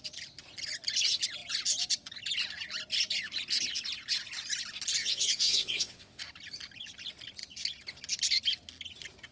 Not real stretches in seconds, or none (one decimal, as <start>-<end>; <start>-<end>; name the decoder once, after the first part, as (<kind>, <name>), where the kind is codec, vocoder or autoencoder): 5.0-6.2 (vocoder, WaveNeXt)